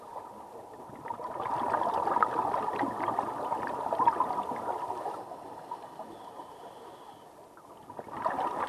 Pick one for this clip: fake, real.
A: real